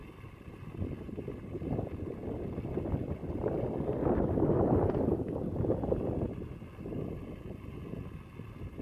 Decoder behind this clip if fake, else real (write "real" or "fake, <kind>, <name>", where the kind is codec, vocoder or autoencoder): real